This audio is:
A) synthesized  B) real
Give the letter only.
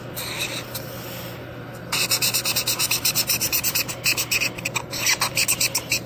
B